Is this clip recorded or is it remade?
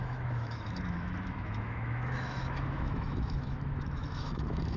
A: remade